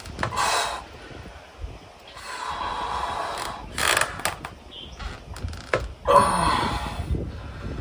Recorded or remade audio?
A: recorded